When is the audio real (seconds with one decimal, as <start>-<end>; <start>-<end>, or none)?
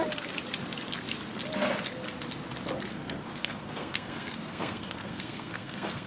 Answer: 0.0-2.9